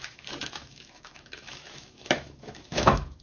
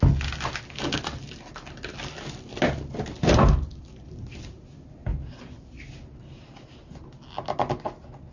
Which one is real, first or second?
second